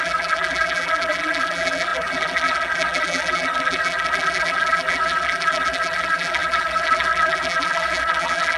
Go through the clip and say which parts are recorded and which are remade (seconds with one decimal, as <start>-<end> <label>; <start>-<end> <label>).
0.0-8.6 remade